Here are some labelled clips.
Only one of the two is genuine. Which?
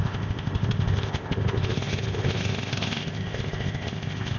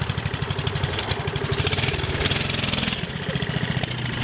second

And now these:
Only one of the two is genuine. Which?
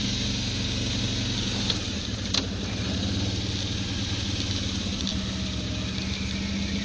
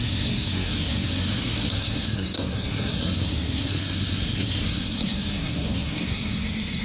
first